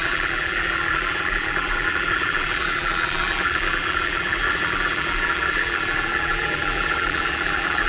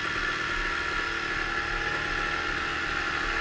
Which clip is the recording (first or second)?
second